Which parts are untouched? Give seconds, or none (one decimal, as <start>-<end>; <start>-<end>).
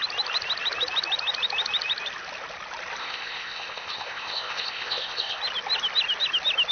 0.0-3.0; 5.4-6.7